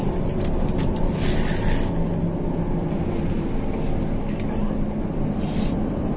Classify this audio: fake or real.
real